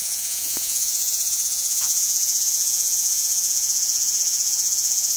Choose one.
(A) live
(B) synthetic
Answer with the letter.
B